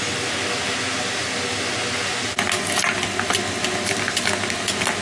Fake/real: real